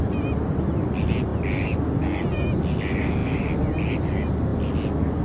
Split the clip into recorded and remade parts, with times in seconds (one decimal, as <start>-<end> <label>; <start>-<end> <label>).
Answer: 0.0-5.2 recorded